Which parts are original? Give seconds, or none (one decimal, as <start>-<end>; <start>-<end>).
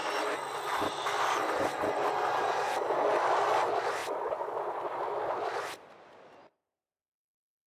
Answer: 2.9-4.0